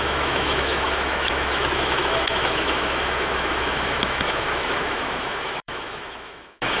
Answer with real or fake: fake